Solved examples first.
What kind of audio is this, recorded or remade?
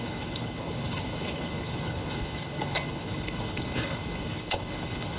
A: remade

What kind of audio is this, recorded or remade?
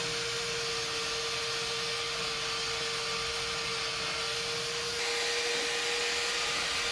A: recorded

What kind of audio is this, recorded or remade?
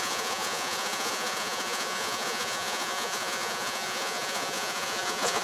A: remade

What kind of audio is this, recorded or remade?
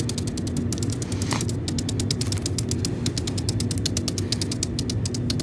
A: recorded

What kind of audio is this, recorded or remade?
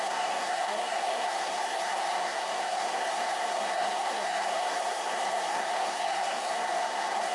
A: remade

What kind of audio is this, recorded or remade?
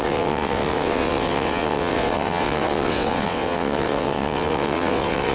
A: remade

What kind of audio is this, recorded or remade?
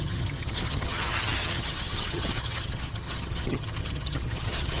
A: remade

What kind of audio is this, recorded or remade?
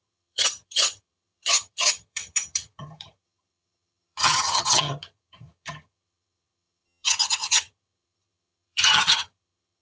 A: remade